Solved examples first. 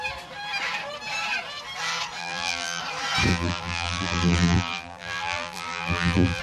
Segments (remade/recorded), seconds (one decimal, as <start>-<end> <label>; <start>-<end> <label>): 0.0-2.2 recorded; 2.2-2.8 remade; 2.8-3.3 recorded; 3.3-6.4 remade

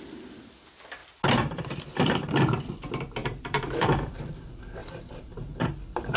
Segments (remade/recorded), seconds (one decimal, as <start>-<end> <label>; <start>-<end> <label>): 0.0-3.2 recorded; 3.2-4.3 remade; 4.3-4.8 recorded; 4.8-6.2 remade

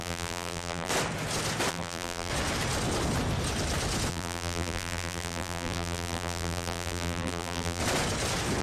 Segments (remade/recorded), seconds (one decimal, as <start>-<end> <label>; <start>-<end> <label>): 0.0-0.9 remade; 0.9-1.7 recorded; 1.7-2.3 remade; 2.3-4.1 recorded; 4.1-7.8 remade; 7.8-8.6 recorded

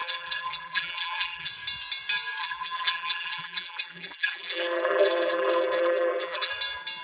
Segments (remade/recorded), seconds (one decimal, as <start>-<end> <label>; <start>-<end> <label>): 0.0-1.5 remade; 1.5-2.4 recorded; 2.4-6.5 remade; 6.5-7.0 recorded